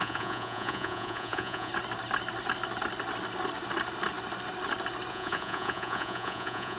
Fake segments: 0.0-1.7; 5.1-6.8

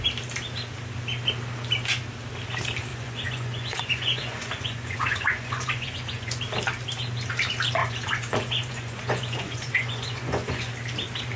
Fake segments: 2.9-6.4; 7.8-10.7

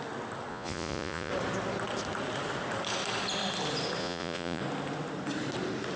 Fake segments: 0.5-1.3; 4.0-4.6

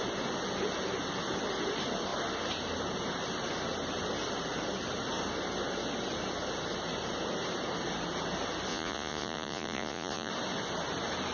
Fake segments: 8.7-10.3

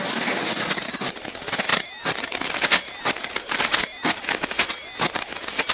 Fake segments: none

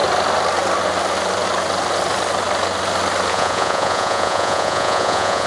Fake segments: 3.3-5.5

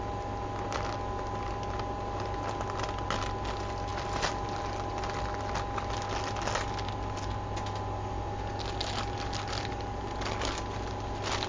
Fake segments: none